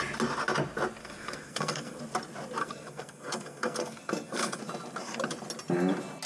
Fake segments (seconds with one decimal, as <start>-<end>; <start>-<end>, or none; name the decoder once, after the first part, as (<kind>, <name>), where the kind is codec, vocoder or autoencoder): 1.0-2.0 (codec, SNAC); 2.6-4.6